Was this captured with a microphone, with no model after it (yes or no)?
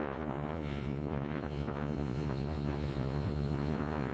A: no